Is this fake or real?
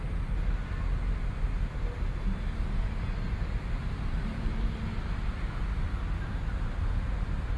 real